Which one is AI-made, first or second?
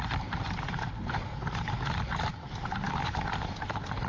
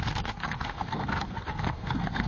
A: second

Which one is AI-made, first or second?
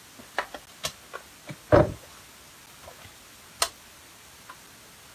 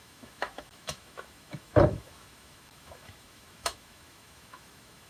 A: second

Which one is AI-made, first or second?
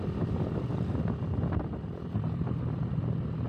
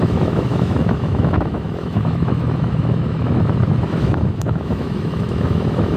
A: second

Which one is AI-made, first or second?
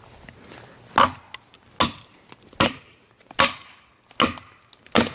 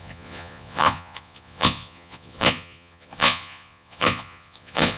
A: second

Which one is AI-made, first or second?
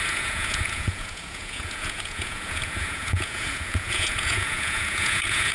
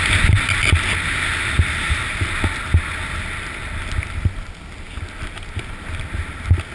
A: first